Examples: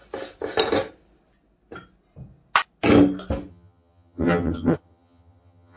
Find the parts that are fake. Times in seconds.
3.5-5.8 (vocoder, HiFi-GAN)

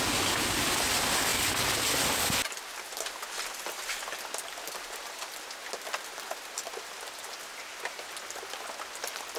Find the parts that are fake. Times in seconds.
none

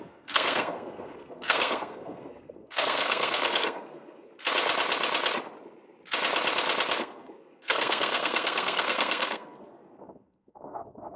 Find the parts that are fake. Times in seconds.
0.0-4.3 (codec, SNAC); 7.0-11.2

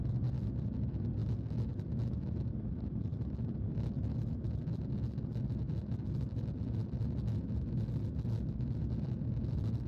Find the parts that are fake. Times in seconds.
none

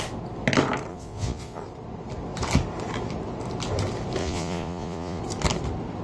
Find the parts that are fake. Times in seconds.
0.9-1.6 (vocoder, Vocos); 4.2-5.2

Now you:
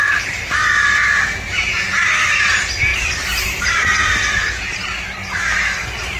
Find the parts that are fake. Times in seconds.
2.9-4.6 (vocoder, BigVGAN v2)

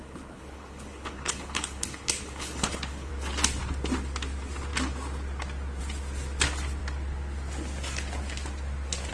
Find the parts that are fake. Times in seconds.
0.0-3.1 (codec, HILCodec)